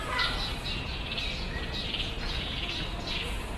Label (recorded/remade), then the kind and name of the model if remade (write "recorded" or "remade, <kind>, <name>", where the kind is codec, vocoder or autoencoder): remade, vocoder, Vocos